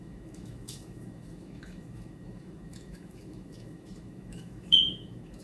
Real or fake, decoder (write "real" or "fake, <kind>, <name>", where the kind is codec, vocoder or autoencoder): fake, autoencoder, DAC-VAE